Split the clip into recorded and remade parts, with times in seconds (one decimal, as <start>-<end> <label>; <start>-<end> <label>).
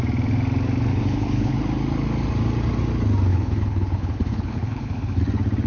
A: 0.0-0.9 recorded; 0.9-1.5 remade; 1.5-3.3 recorded; 3.3-5.2 remade; 5.2-5.7 recorded